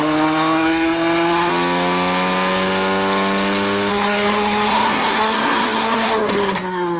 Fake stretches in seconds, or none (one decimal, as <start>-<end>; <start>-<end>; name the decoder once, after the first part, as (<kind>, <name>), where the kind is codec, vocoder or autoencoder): 0.0-1.5 (codec, SNAC); 3.9-7.0